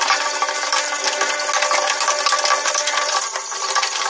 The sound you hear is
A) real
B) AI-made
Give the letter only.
A